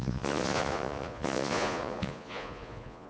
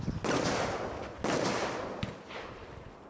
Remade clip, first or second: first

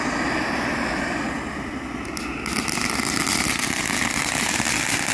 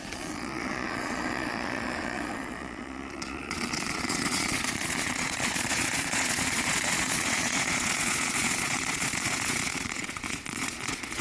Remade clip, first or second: second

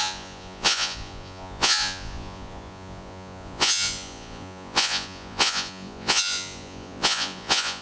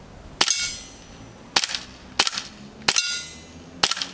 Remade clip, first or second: first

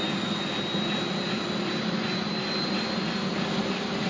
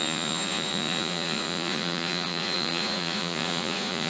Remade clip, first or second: second